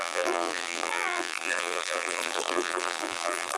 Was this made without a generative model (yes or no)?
no